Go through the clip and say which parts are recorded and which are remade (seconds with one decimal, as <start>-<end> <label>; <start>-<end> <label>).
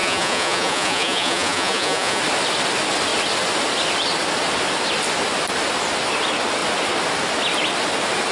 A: 0.0-2.2 remade; 2.2-8.3 recorded